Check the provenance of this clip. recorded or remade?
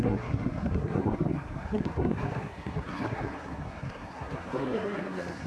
remade